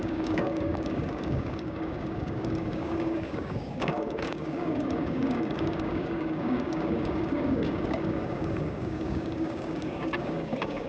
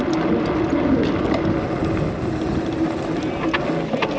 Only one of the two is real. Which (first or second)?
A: second